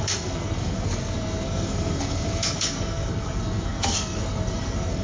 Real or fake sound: fake